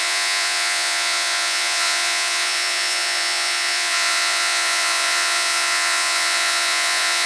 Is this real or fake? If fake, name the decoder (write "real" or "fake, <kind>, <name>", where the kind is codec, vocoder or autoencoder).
fake, vocoder, Vocos